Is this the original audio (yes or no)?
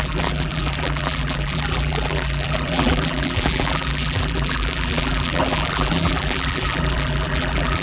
no